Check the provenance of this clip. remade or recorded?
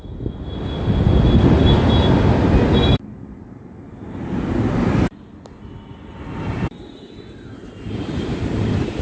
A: recorded